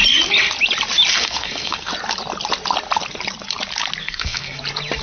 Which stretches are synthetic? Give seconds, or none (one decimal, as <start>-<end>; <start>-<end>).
1.1-1.9; 4.0-4.6